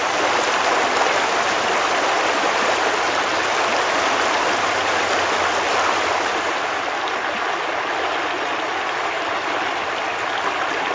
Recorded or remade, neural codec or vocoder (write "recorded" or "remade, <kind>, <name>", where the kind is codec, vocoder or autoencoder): recorded